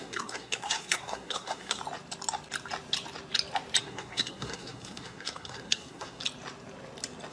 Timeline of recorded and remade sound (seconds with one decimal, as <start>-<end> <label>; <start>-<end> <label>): 0.0-1.8 remade; 1.8-3.8 recorded; 3.8-6.2 remade; 6.2-7.3 recorded